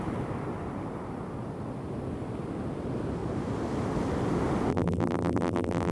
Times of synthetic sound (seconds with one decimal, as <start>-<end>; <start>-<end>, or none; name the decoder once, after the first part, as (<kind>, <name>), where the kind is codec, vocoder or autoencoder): 4.7-5.9 (vocoder, BigVGAN v2)